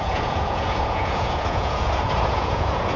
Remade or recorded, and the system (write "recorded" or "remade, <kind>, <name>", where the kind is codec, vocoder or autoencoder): remade, vocoder, Vocos